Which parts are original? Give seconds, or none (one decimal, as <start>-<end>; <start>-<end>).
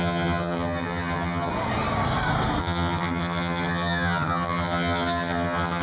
1.5-2.6